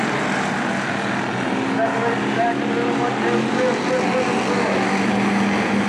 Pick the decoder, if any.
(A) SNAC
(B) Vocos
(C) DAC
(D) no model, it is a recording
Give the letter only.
D